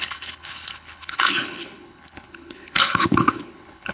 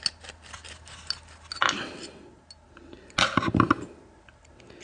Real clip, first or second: second